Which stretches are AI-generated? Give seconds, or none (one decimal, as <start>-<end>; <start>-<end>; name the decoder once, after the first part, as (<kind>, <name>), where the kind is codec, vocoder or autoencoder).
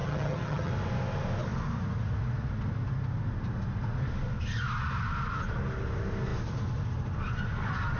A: 0.0-0.7 (vocoder, HiFi-GAN)